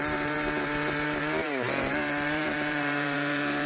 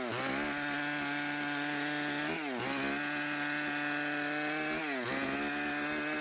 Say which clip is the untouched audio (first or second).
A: second